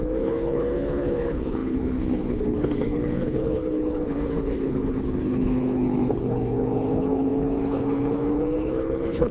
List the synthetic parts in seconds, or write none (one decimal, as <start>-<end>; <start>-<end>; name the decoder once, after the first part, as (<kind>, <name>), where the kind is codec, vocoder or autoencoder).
0.0-9.3 (codec, HILCodec)